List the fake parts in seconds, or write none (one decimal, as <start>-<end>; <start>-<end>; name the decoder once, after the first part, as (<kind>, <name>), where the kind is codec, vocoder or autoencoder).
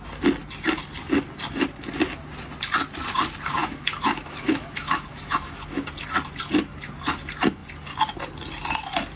3.6-5.9 (autoencoder, DAC-VAE)